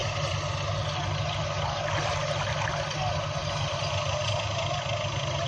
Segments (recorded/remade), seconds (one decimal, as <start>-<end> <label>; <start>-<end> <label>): 0.0-5.5 recorded